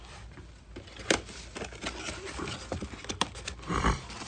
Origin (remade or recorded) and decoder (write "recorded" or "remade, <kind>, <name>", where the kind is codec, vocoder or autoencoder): recorded